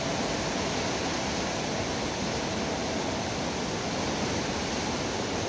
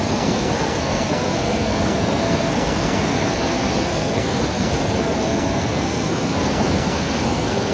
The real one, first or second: first